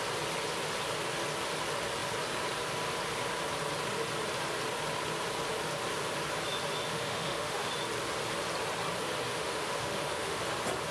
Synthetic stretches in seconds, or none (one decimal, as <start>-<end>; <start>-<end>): 6.9-7.7; 9.3-10.4